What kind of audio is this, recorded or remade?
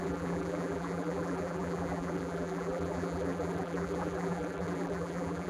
remade